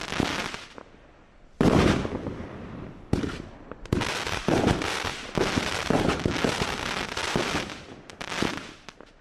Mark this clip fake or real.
real